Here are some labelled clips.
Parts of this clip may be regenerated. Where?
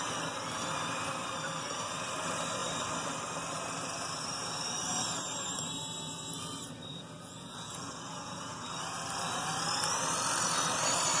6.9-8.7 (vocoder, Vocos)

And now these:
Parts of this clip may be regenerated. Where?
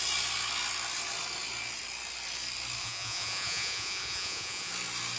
2.8-4.7 (vocoder, Vocos)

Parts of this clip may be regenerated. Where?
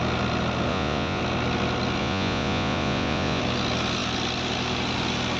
0.7-1.2 (vocoder, Vocos); 2.0-3.4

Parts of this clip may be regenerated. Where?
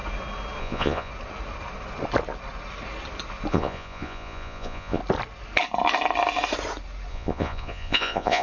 0.6-1.1 (vocoder, Vocos); 3.5-5.0; 7.1-8.4